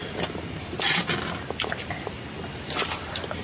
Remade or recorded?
recorded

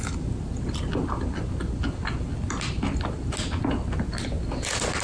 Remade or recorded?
recorded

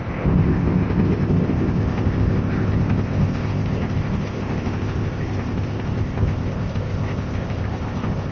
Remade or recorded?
remade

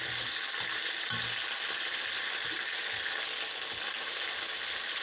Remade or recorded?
recorded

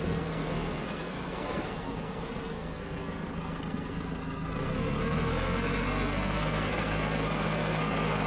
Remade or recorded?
remade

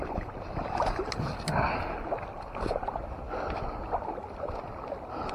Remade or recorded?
recorded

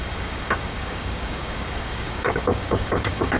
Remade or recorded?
remade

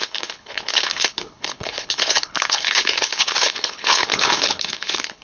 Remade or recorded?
remade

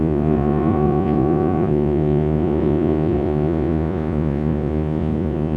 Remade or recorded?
remade